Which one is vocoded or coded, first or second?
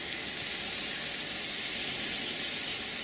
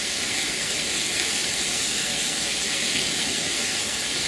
second